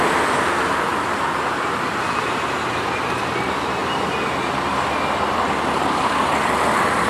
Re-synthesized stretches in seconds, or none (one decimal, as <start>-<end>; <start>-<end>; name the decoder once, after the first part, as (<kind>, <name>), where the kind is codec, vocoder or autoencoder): none